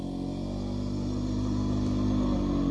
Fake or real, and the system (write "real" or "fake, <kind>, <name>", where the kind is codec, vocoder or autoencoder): real